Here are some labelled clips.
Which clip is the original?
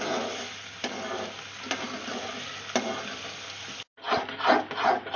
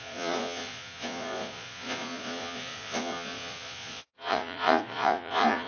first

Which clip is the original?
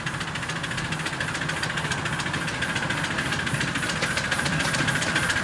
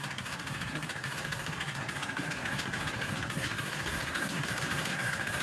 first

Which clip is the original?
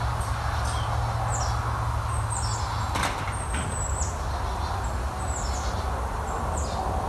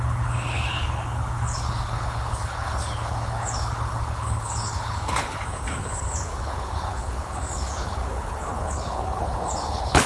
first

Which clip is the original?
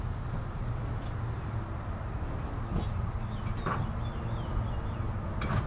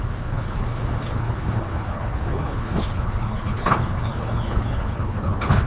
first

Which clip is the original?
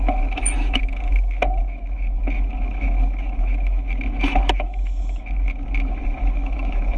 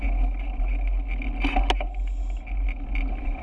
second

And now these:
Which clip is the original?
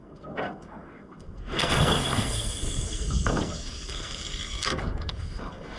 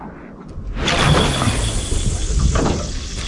second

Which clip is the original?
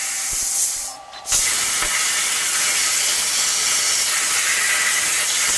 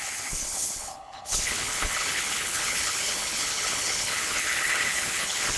first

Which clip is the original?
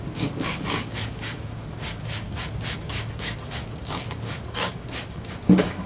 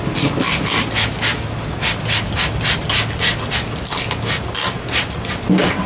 second